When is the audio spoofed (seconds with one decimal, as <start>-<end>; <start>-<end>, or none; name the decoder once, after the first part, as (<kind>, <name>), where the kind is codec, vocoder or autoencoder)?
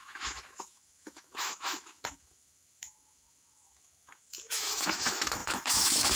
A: 0.0-6.2 (autoencoder, DAC-VAE)